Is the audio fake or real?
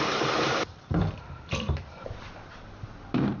fake